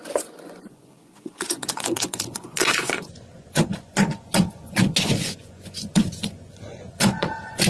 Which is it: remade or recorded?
remade